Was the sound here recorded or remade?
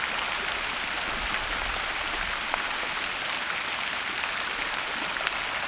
recorded